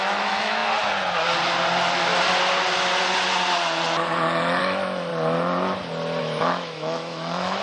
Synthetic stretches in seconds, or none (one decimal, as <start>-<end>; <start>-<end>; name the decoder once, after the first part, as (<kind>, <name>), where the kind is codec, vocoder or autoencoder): 0.0-0.6 (autoencoder, DAC-VAE); 4.6-5.1; 6.2-7.6